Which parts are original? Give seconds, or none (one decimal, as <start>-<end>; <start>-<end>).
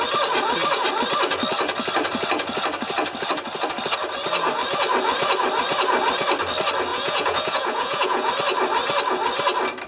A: 0.0-6.9; 8.3-9.9